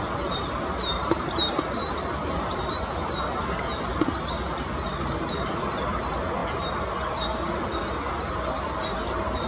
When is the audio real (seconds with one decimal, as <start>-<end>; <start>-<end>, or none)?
0.0-9.5